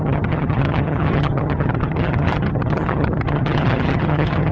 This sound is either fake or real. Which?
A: fake